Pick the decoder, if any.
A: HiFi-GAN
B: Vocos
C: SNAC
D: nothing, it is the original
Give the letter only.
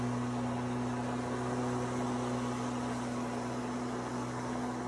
D